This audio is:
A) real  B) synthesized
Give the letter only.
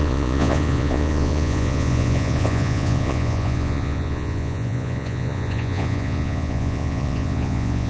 B